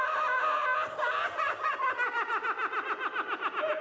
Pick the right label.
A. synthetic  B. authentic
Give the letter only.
B